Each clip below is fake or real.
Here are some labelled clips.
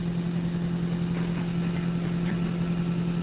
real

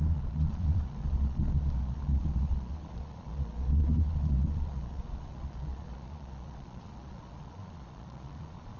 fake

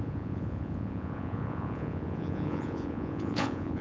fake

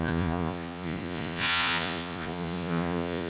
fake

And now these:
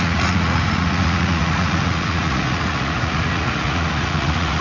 fake